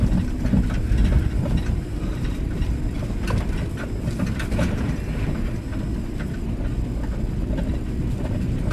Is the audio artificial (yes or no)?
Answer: no